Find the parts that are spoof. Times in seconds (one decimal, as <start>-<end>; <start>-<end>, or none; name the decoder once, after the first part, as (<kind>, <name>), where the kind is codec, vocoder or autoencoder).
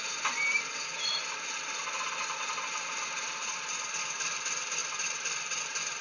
1.1-3.7 (vocoder, BigVGAN v2); 4.8-5.6